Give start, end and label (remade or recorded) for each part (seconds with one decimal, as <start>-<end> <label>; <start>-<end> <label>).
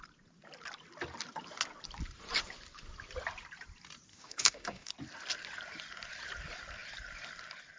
0.0-4.1 recorded; 4.1-4.9 remade; 4.9-7.8 recorded